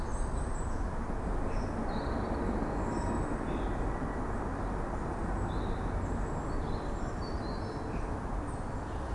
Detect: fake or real real